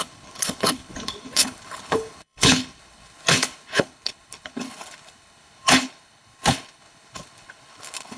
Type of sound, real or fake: fake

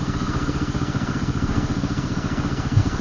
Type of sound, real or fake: fake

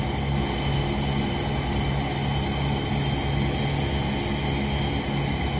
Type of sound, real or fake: real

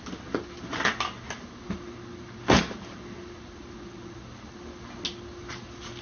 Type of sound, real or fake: real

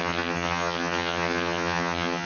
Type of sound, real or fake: fake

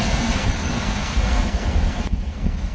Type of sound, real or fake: fake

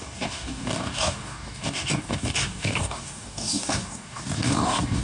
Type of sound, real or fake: fake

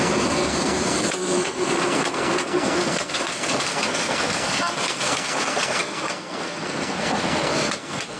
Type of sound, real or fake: fake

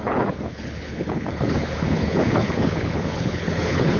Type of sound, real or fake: fake